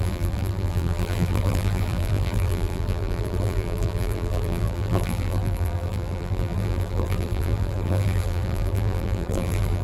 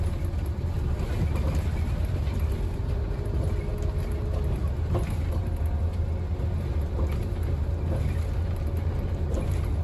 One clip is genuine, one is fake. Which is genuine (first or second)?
second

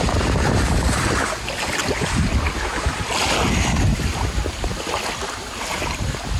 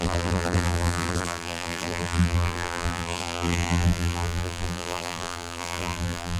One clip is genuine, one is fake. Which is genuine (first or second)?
first